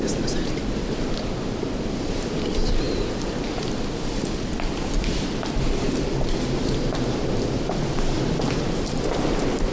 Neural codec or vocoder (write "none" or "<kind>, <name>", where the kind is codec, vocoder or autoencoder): none